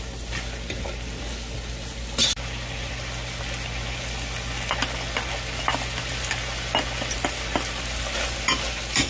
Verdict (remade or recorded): recorded